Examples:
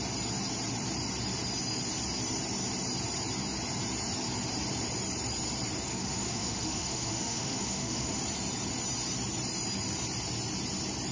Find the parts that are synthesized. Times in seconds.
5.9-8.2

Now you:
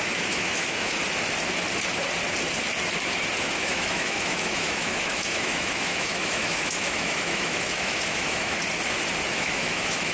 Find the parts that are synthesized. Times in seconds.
0.0-1.0; 3.4-8.6; 9.3-10.1